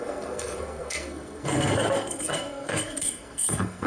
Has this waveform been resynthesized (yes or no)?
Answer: yes